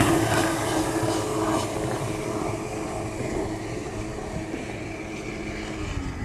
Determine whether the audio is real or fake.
real